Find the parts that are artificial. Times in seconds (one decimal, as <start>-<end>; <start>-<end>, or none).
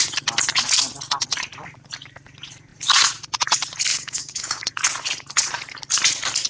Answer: 3.9-4.6